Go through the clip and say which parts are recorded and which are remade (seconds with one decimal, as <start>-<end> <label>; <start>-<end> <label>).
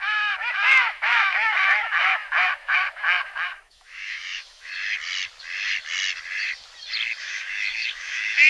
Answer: 0.0-4.7 remade; 4.7-7.2 recorded; 7.2-8.5 remade